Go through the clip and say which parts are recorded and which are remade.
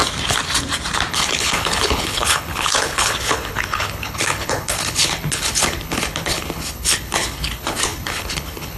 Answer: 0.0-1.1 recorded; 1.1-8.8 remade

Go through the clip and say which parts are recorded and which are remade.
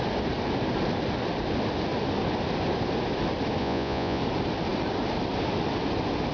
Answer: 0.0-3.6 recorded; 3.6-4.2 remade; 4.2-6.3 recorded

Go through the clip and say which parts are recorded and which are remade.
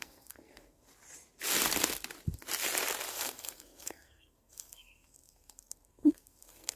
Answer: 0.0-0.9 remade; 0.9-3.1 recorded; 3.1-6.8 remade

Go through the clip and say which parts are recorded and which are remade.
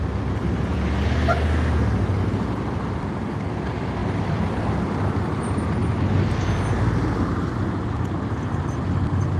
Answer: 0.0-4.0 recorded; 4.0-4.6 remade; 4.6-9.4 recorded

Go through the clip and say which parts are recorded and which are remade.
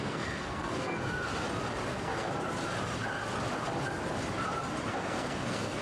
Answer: 0.0-1.3 remade; 1.3-1.9 recorded; 1.9-2.3 remade; 2.3-4.9 recorded; 4.9-5.8 remade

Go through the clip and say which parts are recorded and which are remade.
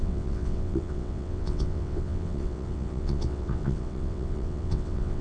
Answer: 0.0-5.2 remade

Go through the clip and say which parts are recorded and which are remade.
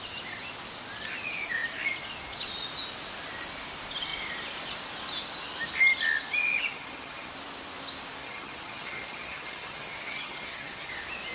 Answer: 0.0-6.7 recorded; 6.7-7.3 remade; 7.3-8.2 recorded; 8.2-10.9 remade; 10.9-11.3 recorded